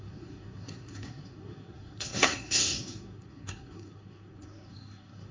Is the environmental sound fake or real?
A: fake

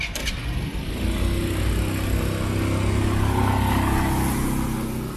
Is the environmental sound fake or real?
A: real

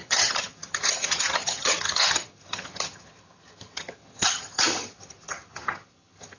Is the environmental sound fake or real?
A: fake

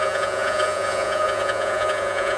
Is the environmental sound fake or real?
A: fake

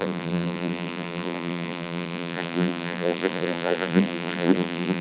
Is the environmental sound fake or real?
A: fake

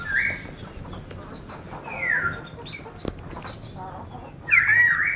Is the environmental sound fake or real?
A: real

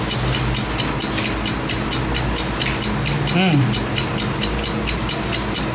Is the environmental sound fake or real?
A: real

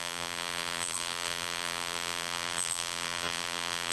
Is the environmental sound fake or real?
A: fake